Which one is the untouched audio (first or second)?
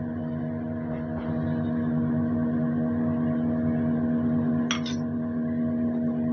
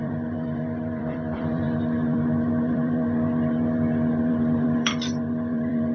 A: first